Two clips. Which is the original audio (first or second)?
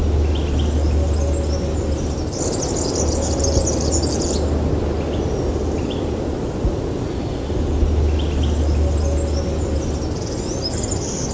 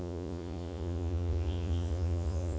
first